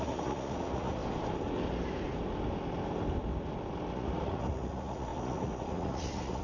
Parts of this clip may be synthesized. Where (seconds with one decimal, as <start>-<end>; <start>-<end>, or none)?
0.0-1.0; 3.9-6.4